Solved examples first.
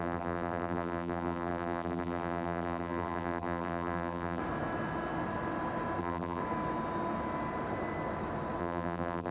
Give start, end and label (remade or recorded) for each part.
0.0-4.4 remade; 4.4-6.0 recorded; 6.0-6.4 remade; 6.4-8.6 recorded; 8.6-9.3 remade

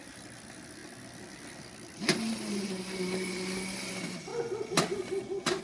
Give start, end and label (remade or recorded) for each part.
0.0-5.6 recorded

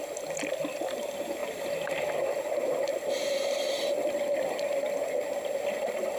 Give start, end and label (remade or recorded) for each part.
0.0-6.2 recorded

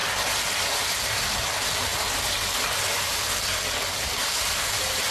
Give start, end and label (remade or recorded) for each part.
0.0-1.0 recorded; 1.0-1.9 remade; 1.9-4.3 recorded; 4.3-5.1 remade

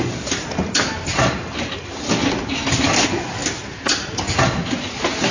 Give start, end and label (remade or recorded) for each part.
0.0-5.3 recorded

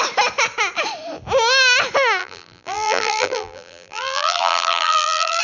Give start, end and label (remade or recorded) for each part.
0.0-2.2 recorded; 2.2-5.4 remade

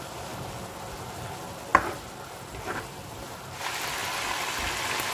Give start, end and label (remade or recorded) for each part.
0.0-1.7 remade; 1.7-2.8 recorded; 2.8-4.0 remade; 4.0-5.1 recorded

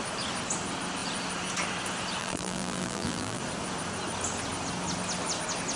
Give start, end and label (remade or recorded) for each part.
0.0-2.2 recorded; 2.2-3.4 remade; 3.4-5.8 recorded